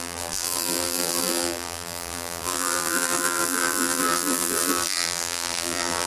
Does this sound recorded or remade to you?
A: remade